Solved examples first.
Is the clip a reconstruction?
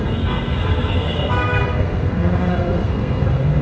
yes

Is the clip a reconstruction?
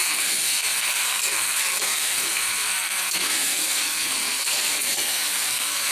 yes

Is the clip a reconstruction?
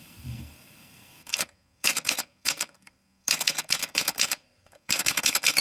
yes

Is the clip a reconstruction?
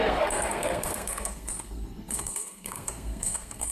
yes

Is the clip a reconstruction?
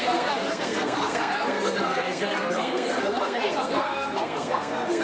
yes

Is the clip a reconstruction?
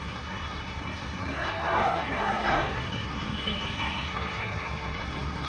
yes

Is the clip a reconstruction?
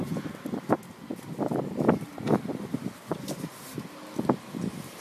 no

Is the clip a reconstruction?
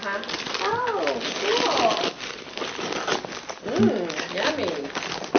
no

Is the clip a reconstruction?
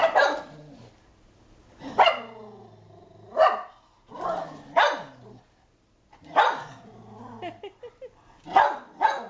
no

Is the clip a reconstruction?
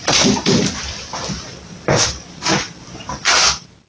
no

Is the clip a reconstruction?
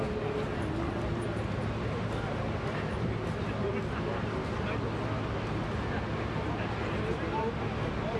no